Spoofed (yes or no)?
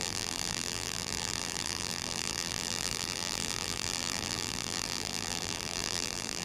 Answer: yes